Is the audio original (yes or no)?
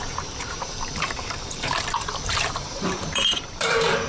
no